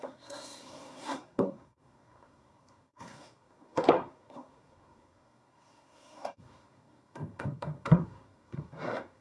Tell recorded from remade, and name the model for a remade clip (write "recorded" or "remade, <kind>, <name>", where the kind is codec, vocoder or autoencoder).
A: remade, codec, SNAC